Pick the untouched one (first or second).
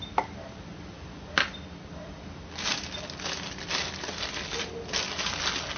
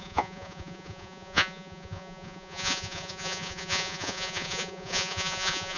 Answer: first